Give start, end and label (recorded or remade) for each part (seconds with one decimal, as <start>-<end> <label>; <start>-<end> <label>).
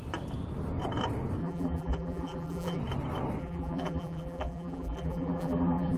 0.0-1.4 recorded; 1.4-2.8 remade; 2.8-3.4 recorded; 3.4-6.0 remade